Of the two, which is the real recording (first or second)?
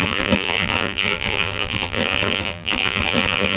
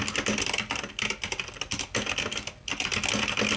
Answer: second